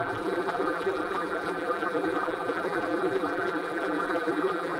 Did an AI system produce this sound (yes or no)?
yes